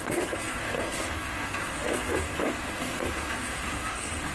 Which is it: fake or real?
fake